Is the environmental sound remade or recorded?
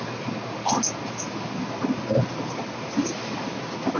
recorded